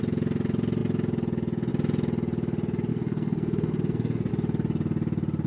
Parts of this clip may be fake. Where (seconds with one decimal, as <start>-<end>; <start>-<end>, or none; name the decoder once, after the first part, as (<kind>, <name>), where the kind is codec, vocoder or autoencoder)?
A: 2.9-4.3 (codec, SNAC)